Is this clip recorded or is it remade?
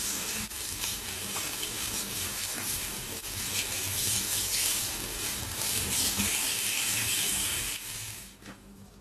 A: remade